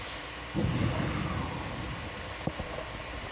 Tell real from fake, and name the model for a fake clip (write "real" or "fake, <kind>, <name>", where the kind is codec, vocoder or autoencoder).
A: real